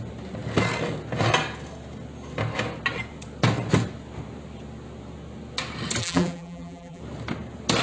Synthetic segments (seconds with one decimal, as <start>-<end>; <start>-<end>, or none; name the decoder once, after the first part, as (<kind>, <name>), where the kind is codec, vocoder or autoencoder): 6.0-7.0 (vocoder, BigVGAN v2)